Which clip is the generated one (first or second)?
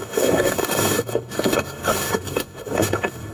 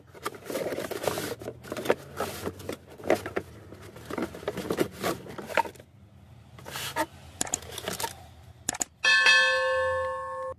first